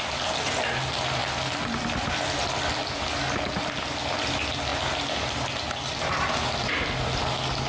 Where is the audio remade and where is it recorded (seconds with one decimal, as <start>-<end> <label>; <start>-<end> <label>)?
0.0-1.2 recorded; 1.2-2.4 remade; 2.4-4.7 recorded; 4.7-7.2 remade; 7.2-7.7 recorded